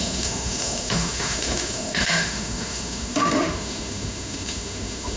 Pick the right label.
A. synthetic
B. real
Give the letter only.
A